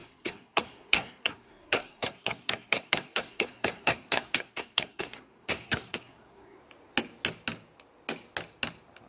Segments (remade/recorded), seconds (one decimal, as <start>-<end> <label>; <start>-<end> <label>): 0.0-6.6 remade; 6.6-9.1 recorded